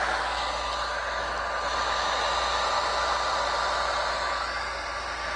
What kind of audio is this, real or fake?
real